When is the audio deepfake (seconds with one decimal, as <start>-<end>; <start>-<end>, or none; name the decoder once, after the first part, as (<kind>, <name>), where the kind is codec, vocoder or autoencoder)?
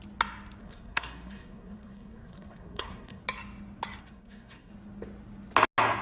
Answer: 0.6-3.2 (codec, SNAC); 4.0-4.7